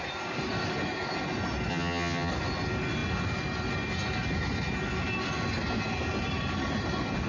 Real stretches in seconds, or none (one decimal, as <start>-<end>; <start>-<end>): 0.0-1.7; 2.3-7.3